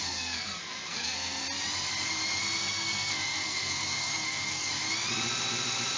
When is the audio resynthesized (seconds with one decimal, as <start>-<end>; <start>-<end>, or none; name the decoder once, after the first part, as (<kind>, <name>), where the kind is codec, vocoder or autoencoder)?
0.0-1.4 (codec, SNAC); 2.6-4.7